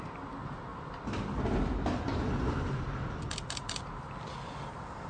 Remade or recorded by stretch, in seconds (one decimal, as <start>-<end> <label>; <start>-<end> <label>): 0.0-5.1 recorded